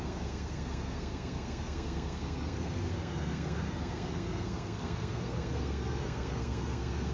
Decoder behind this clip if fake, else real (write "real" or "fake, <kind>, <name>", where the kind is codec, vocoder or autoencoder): fake, codec, SNAC